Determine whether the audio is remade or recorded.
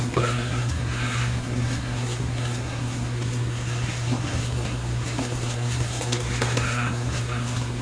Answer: remade